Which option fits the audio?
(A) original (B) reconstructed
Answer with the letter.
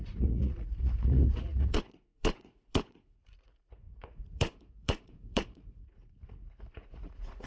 B